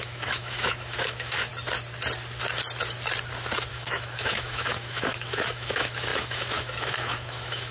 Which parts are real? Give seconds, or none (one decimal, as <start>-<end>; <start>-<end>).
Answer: 1.5-3.7